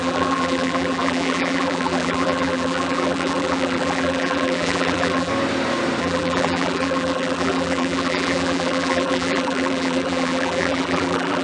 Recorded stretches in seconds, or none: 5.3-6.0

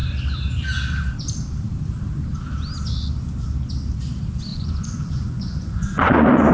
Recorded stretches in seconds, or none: 0.0-4.5

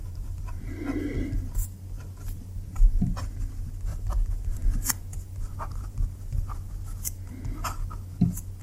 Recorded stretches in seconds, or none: 0.6-2.7; 3.2-3.9; 6.7-8.6